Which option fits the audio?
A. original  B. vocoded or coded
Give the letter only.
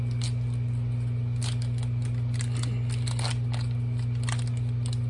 A